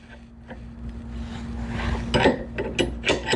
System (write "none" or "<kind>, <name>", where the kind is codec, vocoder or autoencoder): none